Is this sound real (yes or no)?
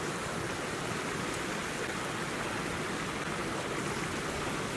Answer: yes